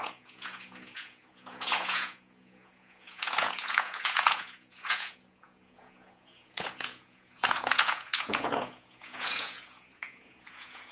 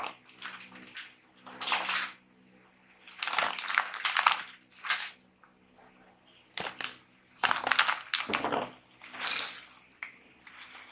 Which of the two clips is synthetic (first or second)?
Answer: first